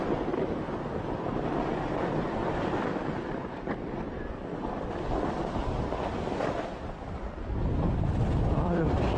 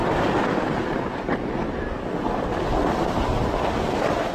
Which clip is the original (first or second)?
second